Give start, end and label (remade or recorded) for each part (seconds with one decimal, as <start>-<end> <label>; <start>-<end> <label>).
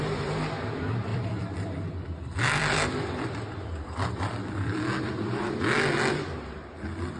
0.0-1.1 recorded; 1.1-5.1 remade; 5.1-7.2 recorded